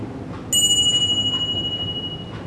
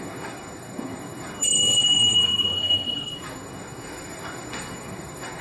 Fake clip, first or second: second